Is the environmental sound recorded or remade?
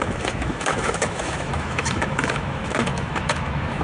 remade